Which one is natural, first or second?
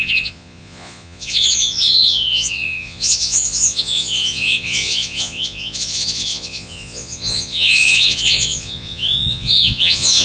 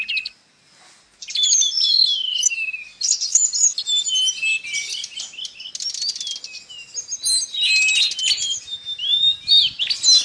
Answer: second